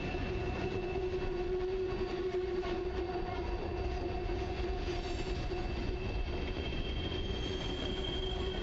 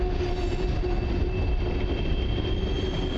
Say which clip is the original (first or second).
second